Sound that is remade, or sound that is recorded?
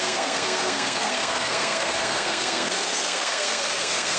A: remade